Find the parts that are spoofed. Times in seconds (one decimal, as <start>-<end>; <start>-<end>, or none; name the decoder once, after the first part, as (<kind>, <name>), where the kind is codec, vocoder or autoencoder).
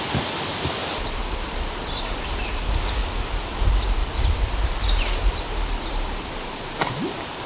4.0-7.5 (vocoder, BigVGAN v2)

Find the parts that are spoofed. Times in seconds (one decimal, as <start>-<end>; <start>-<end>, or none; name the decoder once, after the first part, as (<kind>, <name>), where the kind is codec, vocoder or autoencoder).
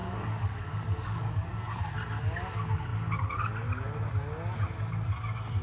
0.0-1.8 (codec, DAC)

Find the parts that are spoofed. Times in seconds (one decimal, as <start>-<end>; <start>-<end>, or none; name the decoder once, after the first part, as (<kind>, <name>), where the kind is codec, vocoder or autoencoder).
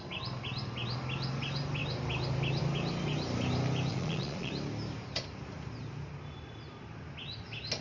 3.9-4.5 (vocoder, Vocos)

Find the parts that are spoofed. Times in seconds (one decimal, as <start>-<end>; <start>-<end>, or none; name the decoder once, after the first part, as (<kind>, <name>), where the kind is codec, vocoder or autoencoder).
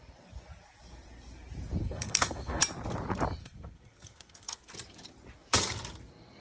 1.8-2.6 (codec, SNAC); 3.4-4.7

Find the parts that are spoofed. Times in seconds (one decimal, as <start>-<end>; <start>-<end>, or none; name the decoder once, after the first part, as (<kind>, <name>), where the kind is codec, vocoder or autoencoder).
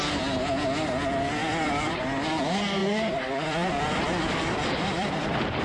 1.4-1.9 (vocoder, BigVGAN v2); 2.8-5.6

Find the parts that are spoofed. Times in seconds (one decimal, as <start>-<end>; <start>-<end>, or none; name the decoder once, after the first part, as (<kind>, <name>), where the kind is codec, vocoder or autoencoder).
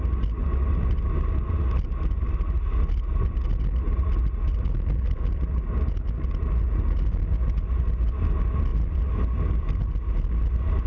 none